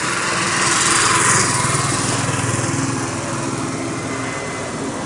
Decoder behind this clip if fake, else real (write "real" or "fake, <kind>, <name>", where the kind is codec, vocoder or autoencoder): real